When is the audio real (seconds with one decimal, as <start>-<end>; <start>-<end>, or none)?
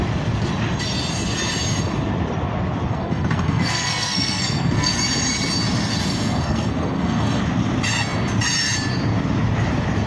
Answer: 0.0-2.9; 5.0-6.1; 7.4-10.1